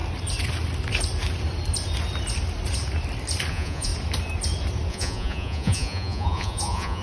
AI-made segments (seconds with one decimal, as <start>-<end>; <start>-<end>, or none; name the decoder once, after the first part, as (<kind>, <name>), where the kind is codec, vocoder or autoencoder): 3.5-3.9 (vocoder, Vocos); 4.9-7.0